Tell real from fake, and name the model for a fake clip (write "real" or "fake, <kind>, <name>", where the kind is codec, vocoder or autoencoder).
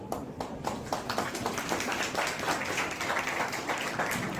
real